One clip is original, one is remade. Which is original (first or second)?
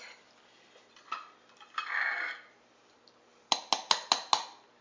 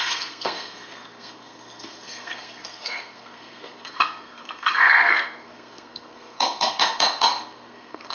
first